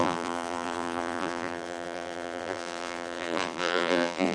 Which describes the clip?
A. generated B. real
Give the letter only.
A